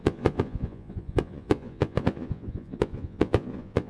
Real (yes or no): no